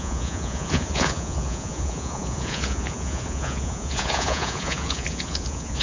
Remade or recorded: remade